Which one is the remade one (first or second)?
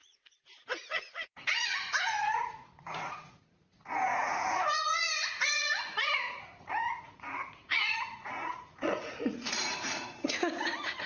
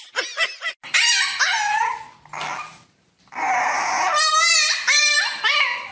first